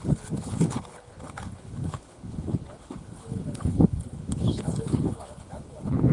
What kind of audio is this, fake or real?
fake